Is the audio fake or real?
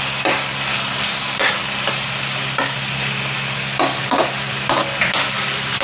real